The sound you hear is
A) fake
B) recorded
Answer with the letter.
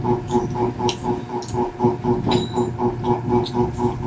B